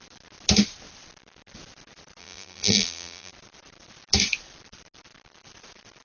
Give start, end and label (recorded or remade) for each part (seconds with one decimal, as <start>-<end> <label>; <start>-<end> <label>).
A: 0.0-2.2 recorded; 2.2-3.3 remade; 3.3-6.0 recorded